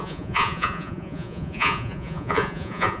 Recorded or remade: remade